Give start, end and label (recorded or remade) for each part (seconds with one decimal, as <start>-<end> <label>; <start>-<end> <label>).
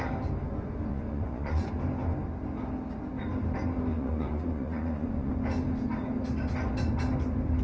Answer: 0.0-0.9 recorded; 0.9-1.7 remade; 1.7-3.9 recorded; 3.9-5.3 remade; 5.3-7.6 recorded